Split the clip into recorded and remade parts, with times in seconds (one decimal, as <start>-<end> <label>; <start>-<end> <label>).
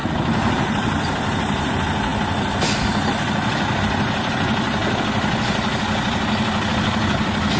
0.0-1.7 remade; 1.7-7.6 recorded